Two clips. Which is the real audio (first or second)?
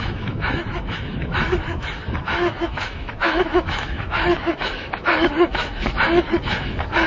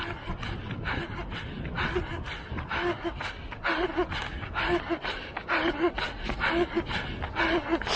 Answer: second